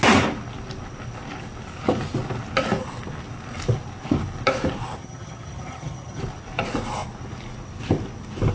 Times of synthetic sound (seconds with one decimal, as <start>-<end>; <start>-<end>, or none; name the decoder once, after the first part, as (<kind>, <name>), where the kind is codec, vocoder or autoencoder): 5.0-6.2 (vocoder, HiFi-GAN)